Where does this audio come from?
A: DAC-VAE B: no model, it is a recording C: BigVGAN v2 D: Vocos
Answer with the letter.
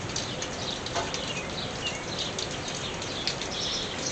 B